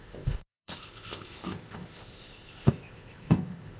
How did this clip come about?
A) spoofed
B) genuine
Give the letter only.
A